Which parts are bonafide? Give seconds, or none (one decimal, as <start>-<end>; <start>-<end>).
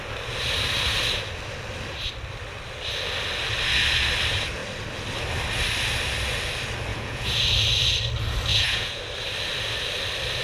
0.0-6.9; 7.4-8.5; 9.0-10.4